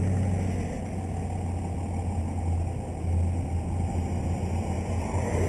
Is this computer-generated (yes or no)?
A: no